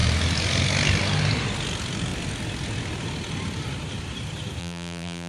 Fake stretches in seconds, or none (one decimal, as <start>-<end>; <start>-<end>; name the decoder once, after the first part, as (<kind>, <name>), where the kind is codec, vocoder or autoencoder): 4.6-5.3 (vocoder, BigVGAN v2)